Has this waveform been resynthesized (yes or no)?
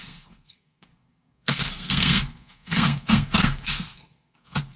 yes